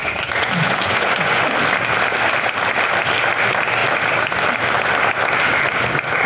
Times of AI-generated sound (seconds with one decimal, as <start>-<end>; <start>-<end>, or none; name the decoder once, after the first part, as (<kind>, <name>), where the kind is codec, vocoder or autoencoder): 0.0-1.4 (vocoder, Vocos)